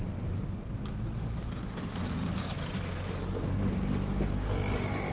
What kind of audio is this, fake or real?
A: real